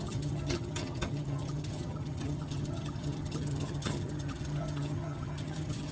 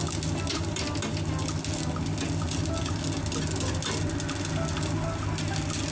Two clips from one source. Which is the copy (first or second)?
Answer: first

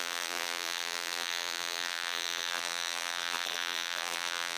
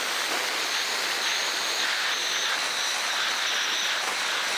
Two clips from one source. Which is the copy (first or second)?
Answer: first